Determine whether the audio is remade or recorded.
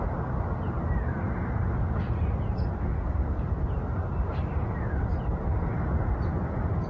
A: remade